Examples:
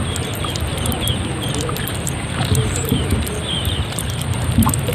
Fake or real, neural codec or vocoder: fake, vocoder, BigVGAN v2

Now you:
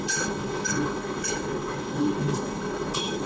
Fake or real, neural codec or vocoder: fake, codec, HILCodec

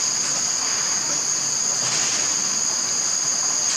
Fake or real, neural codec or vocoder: real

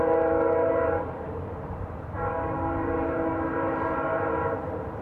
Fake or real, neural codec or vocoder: fake, vocoder, BigVGAN v2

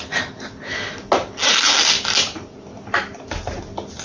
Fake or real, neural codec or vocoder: real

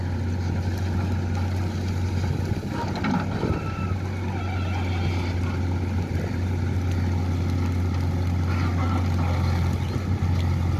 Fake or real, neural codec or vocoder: real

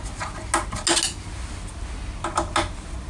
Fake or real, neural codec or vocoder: real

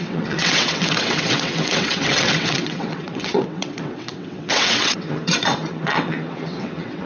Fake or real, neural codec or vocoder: fake, vocoder, WaveNeXt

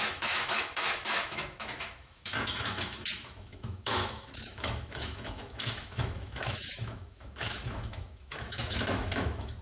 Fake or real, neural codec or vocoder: fake, autoencoder, DAC-VAE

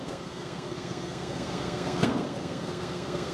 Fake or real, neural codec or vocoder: fake, codec, SNAC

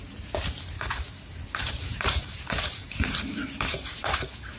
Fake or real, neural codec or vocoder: fake, vocoder, BigVGAN v2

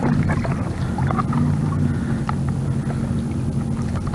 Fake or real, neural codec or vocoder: real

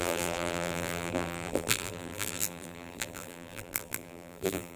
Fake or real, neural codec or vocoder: fake, vocoder, BigVGAN v2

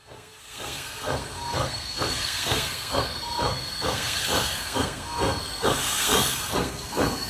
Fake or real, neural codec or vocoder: fake, codec, SNAC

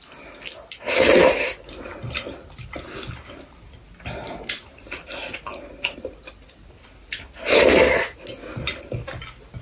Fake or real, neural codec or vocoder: real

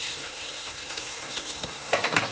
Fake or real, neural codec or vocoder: fake, codec, SNAC